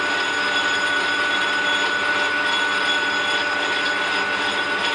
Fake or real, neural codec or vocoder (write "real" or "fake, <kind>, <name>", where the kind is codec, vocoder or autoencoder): real